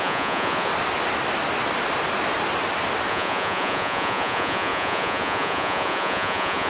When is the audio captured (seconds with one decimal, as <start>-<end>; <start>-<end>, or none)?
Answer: 0.7-3.1